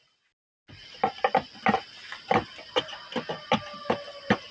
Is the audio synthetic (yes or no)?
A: no